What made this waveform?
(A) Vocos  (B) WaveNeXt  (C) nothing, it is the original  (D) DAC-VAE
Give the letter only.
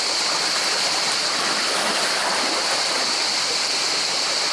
C